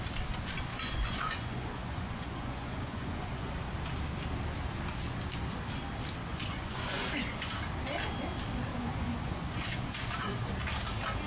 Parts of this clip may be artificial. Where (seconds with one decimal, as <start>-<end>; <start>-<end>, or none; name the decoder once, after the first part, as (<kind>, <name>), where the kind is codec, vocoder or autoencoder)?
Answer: 0.7-3.5 (vocoder, Vocos); 6.2-7.5; 8.7-10.5